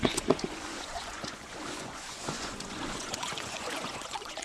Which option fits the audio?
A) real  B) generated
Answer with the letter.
B